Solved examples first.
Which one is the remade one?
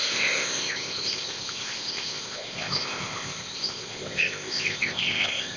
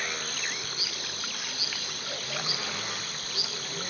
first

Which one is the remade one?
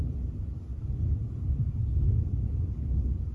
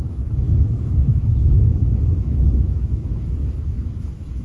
second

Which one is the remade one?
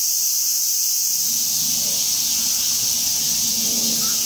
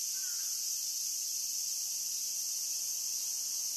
second